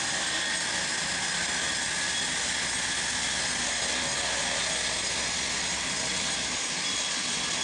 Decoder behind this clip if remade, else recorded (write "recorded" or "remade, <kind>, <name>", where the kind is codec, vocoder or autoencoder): recorded